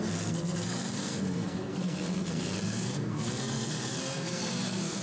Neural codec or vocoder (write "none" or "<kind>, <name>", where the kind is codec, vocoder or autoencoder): codec, SNAC